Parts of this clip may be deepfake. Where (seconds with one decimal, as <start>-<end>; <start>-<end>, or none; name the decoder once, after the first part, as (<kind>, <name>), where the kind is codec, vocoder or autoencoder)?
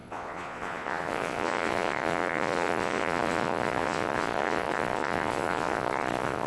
0.0-6.5 (vocoder, Vocos)